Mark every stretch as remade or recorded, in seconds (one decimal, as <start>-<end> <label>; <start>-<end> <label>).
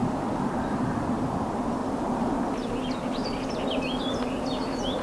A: 0.0-5.0 recorded